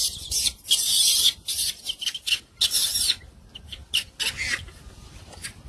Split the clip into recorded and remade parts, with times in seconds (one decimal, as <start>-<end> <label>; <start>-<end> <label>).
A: 0.0-5.7 recorded